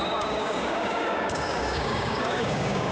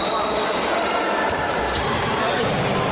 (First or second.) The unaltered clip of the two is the second